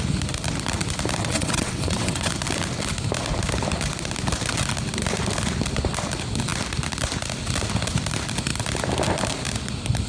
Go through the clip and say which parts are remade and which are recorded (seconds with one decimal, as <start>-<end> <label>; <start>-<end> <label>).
0.0-1.2 recorded; 1.2-2.3 remade; 2.3-10.1 recorded